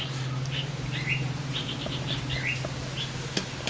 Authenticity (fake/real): real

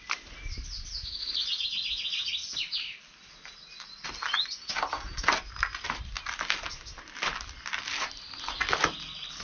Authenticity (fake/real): real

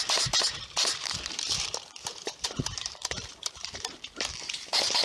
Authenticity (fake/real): fake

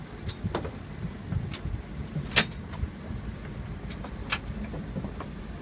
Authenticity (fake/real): real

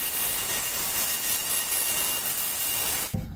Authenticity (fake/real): real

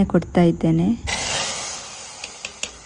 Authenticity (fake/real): real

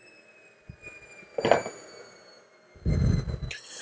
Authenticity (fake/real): real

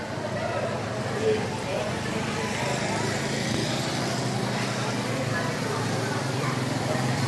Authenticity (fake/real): fake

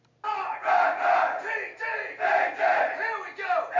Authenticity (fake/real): real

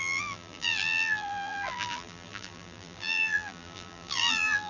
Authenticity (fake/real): fake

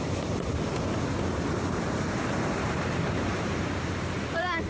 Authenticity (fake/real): fake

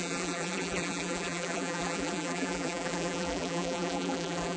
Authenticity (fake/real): fake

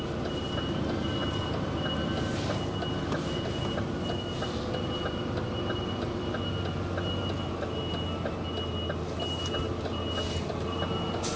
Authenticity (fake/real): real